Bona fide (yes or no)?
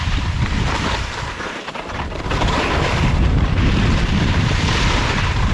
no